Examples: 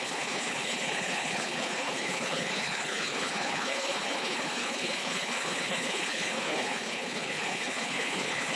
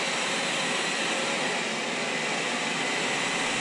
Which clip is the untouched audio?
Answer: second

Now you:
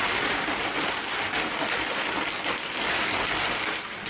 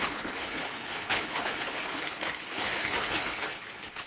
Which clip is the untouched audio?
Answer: first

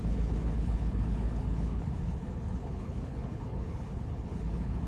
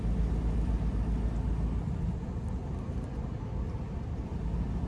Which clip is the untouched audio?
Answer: second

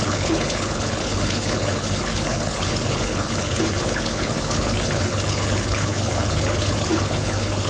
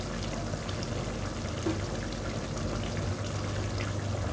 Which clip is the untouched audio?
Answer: second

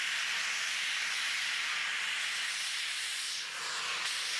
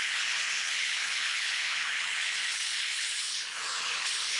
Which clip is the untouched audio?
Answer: first